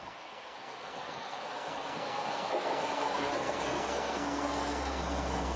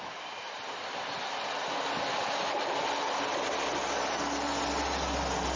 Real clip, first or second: second